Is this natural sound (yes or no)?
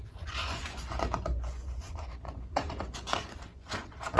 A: no